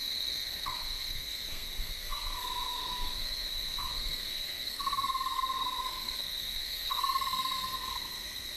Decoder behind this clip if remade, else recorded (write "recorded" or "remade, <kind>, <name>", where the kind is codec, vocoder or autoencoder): remade, codec, SNAC